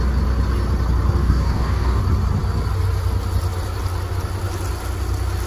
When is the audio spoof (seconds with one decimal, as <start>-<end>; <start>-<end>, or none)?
1.2-2.0

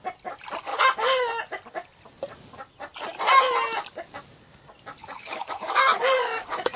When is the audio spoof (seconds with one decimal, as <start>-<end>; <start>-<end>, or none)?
5.0-6.8

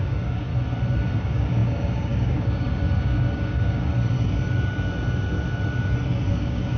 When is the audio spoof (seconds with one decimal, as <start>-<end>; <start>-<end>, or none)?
0.0-0.5; 1.2-3.9; 6.3-6.8